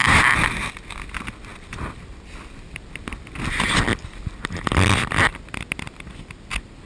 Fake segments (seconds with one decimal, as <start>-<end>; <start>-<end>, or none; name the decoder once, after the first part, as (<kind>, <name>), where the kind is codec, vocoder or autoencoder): none